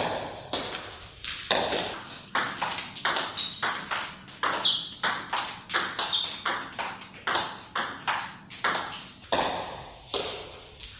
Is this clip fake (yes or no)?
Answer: no